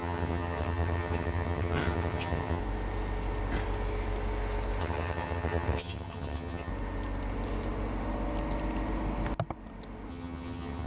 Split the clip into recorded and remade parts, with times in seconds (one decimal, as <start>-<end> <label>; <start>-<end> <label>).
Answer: 0.0-2.6 remade; 2.6-4.8 recorded; 4.8-6.7 remade; 6.7-10.1 recorded; 10.1-10.9 remade